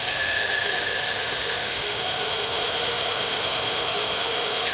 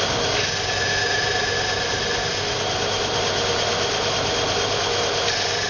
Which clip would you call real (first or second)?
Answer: second